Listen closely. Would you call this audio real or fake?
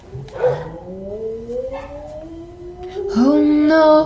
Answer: real